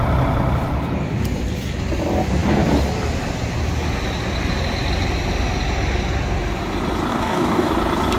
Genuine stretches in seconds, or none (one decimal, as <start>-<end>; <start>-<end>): 0.0-7.1; 7.7-8.2